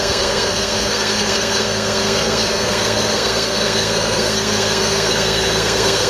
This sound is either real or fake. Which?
fake